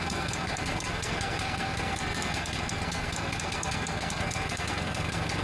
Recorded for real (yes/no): no